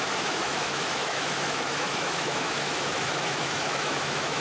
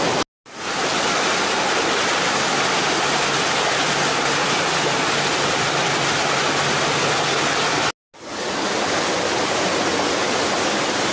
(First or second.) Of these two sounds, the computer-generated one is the first